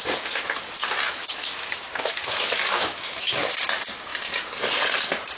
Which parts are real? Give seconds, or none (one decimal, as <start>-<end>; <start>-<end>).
0.0-1.2; 3.5-5.4